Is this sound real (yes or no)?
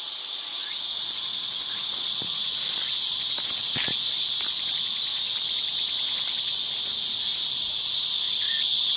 yes